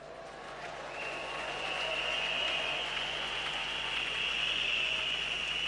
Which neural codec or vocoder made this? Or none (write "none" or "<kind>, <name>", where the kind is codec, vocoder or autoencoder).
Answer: vocoder, Vocos